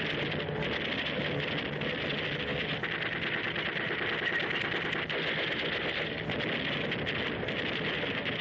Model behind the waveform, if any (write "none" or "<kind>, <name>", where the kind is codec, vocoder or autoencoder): none